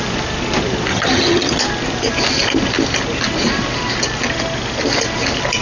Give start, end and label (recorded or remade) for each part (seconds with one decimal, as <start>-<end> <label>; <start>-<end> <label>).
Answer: 0.0-0.9 recorded; 0.9-1.6 remade; 1.6-5.6 recorded